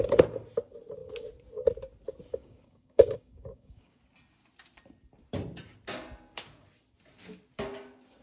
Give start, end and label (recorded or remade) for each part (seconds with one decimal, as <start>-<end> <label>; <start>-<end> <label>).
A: 0.0-2.3 recorded; 2.3-4.0 remade; 4.0-8.2 recorded